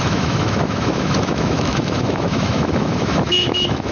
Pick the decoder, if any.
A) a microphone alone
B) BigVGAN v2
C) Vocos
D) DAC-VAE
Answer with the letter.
D